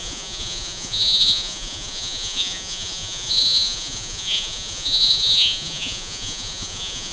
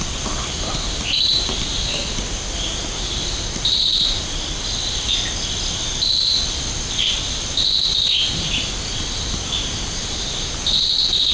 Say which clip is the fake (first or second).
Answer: first